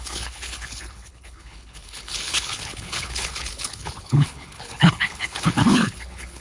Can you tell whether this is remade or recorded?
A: remade